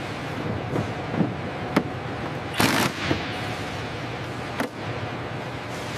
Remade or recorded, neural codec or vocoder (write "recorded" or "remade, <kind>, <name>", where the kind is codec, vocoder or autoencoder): recorded